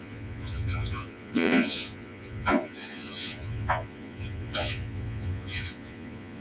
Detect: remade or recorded remade